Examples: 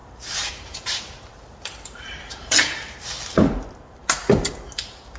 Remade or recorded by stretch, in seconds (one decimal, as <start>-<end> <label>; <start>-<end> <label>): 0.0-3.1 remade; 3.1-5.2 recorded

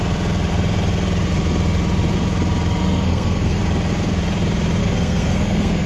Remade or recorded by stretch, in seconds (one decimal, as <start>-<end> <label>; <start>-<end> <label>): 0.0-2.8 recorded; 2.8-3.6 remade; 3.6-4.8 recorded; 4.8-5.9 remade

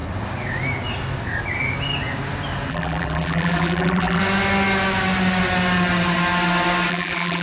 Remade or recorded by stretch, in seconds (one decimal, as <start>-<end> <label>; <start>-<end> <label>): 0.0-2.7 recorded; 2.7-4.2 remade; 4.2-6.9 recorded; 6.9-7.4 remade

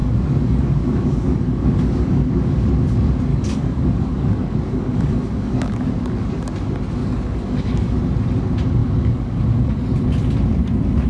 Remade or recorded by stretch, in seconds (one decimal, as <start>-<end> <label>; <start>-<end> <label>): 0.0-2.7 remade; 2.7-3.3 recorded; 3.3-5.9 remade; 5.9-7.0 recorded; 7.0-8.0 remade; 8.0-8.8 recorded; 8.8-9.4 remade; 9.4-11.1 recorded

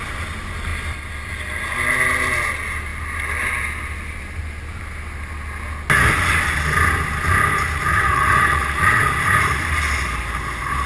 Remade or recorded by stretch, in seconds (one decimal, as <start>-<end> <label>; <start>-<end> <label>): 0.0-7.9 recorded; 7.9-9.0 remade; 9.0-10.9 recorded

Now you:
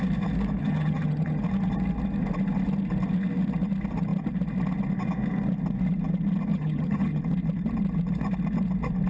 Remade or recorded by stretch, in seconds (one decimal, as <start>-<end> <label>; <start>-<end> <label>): 0.0-0.6 recorded; 0.6-1.4 remade; 1.4-6.5 recorded; 6.5-7.2 remade; 7.2-9.1 recorded